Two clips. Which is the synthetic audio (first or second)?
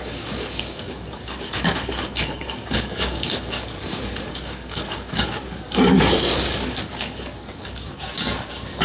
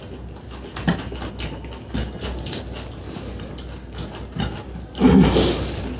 first